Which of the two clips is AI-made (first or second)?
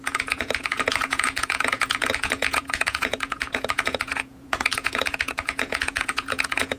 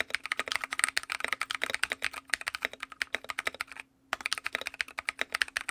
first